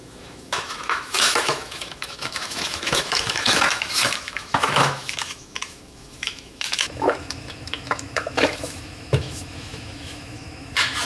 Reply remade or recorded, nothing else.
remade